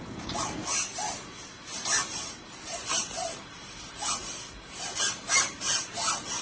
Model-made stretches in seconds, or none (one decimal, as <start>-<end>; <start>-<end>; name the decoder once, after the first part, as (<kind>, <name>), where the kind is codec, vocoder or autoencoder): none